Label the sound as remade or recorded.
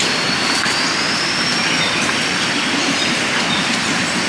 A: recorded